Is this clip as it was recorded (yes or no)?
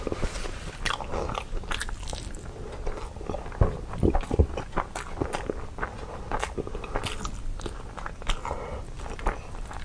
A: yes